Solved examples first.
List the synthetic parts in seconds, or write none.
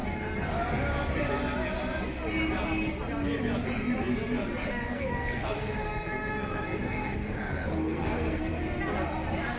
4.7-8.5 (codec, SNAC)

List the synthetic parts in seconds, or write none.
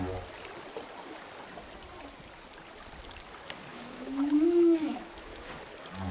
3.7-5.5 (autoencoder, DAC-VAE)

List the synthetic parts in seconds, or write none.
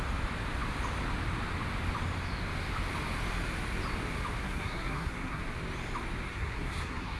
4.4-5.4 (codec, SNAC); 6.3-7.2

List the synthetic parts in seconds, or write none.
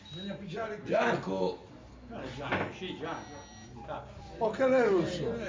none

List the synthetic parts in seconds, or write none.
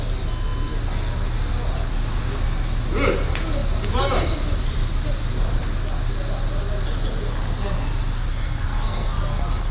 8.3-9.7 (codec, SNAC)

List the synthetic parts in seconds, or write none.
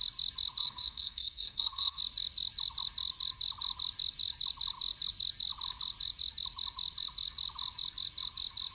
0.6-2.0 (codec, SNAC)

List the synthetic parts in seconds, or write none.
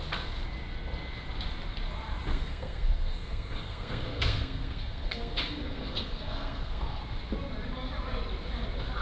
2.3-7.0 (codec, SNAC)